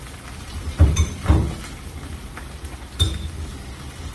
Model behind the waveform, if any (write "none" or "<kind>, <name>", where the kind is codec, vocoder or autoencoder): none